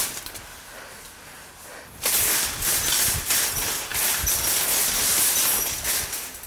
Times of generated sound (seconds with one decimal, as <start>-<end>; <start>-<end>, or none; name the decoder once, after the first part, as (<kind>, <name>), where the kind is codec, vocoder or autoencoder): none